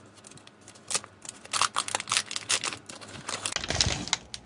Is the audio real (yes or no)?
yes